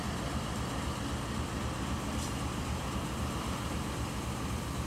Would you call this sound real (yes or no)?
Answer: yes